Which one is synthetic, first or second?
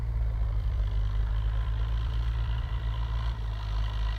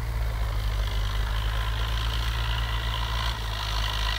first